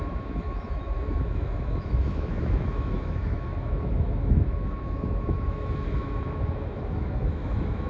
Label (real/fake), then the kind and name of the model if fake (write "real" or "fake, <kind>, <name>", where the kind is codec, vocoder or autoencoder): fake, autoencoder, DAC-VAE